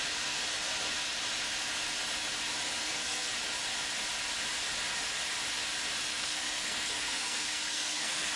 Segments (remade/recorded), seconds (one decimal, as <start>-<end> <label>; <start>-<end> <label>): 0.0-2.8 recorded; 2.8-3.3 remade; 3.3-6.1 recorded; 6.1-8.4 remade